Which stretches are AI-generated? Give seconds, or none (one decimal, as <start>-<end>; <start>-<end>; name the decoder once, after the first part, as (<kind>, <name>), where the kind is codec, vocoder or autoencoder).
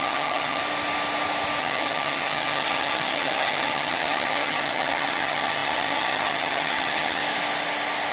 0.0-0.6 (vocoder, HiFi-GAN); 1.6-7.2